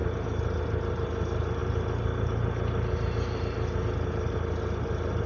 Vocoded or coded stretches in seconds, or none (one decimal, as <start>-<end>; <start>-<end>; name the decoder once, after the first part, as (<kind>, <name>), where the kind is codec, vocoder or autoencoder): none